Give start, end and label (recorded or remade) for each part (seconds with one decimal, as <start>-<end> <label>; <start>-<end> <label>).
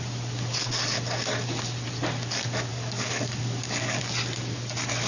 0.0-2.7 recorded; 2.7-4.0 remade; 4.0-5.1 recorded